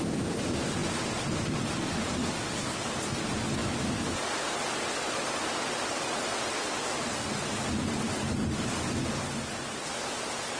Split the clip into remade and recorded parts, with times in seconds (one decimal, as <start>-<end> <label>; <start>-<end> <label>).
0.0-0.8 recorded; 0.8-1.5 remade; 1.5-8.4 recorded; 8.4-9.1 remade; 9.1-10.6 recorded